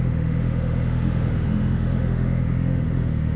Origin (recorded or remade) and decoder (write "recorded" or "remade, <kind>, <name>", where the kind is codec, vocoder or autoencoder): remade, autoencoder, DAC-VAE